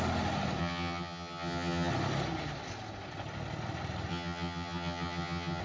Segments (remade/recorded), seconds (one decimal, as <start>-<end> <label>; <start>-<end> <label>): 0.0-0.6 recorded; 0.6-1.9 remade; 1.9-4.1 recorded; 4.1-5.6 remade